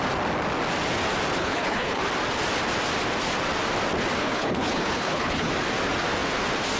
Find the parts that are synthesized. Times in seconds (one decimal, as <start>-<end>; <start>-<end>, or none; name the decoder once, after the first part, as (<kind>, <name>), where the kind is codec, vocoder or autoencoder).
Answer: 1.4-2.0 (codec, HILCodec); 4.2-5.5